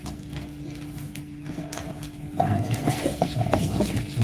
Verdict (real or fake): fake